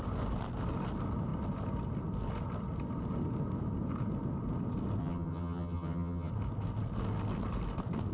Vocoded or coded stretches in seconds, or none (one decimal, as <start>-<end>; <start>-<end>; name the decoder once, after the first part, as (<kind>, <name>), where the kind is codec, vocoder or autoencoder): 5.0-6.3 (vocoder, HiFi-GAN)